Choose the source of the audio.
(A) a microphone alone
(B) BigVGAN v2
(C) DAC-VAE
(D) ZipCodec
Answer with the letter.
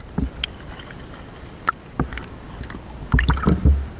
A